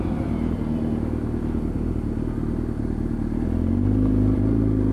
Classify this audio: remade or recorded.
recorded